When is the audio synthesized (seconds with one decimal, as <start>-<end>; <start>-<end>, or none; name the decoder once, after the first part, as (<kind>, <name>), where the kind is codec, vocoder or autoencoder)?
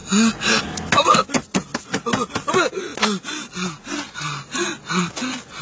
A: none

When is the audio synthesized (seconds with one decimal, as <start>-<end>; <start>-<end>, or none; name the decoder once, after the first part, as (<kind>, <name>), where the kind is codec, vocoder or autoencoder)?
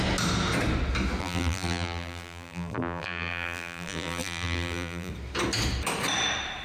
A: 1.2-5.1 (vocoder, BigVGAN v2)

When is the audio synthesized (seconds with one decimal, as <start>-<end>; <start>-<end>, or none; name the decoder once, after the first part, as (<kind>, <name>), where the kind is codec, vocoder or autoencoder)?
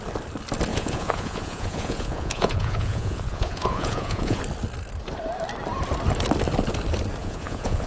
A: 0.7-4.4 (vocoder, Vocos); 7.2-7.9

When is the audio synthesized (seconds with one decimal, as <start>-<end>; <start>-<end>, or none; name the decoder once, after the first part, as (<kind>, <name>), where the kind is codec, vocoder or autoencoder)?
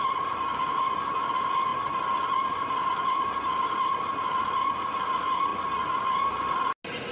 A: none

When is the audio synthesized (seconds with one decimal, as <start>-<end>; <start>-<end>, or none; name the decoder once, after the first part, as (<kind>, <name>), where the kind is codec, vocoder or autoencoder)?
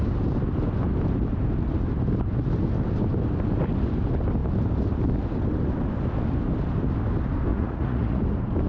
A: 7.5-8.2 (vocoder, Vocos)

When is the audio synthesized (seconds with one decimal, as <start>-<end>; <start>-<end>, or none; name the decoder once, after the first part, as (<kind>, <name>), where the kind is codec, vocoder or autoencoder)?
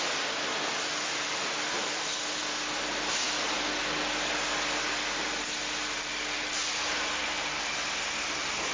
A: none